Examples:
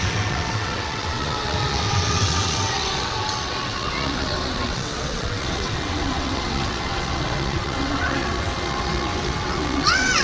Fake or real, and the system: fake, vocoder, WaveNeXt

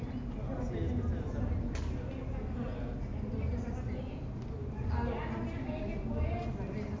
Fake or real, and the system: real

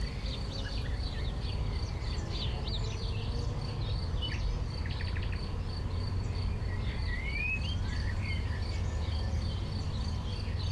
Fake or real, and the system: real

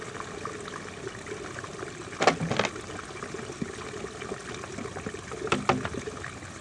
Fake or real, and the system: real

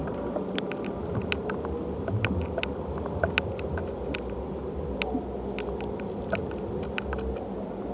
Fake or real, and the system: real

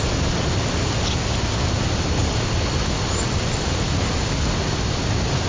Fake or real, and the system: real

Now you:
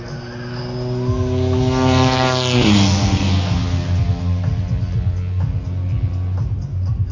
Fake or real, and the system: real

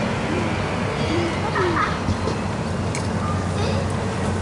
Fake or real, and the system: real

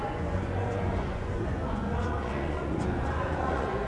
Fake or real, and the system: fake, vocoder, Vocos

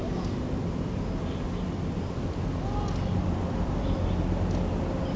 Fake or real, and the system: real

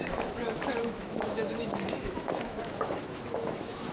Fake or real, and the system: fake, autoencoder, DAC-VAE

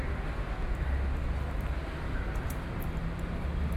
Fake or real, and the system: real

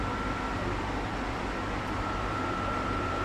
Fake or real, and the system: fake, vocoder, BigVGAN v2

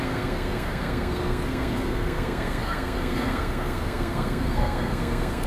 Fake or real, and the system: fake, codec, SNAC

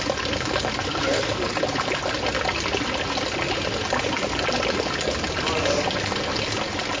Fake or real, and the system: real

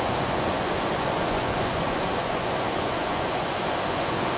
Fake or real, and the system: fake, vocoder, Vocos